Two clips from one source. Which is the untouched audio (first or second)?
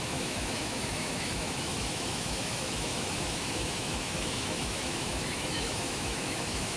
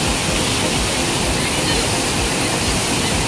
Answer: second